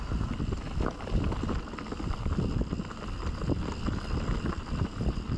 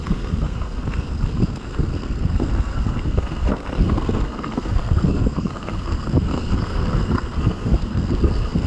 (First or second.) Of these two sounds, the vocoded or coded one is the second